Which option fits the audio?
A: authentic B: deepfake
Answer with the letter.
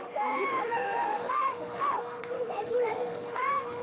B